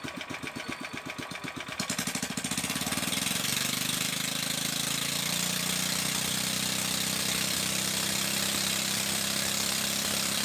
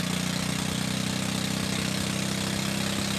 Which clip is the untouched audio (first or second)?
second